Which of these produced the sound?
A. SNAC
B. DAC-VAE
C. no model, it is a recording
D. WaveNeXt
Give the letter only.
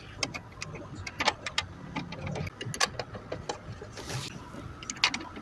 C